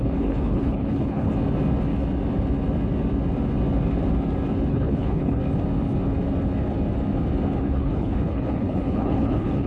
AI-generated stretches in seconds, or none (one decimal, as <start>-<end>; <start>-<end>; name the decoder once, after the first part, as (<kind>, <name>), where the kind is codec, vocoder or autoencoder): 0.0-1.3 (codec, HILCodec); 4.7-5.4; 7.6-9.7